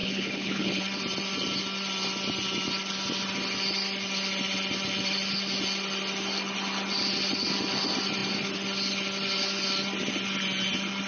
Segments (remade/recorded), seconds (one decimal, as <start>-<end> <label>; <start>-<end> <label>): 0.0-0.8 remade; 0.8-11.1 recorded